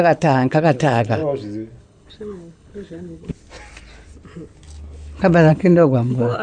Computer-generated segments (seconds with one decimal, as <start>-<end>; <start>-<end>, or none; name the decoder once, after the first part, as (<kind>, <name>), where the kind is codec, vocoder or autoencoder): 0.0-1.2 (codec, HILCodec); 1.8-3.3; 5.5-6.4